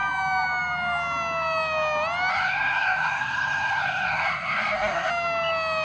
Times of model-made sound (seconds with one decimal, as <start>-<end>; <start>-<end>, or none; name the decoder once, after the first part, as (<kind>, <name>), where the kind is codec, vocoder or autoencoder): 2.3-5.1 (codec, SNAC)